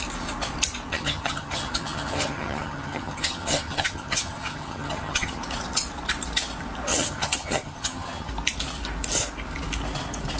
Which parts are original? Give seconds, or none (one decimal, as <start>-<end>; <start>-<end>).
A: 0.0-0.9; 5.4-6.9; 8.3-10.4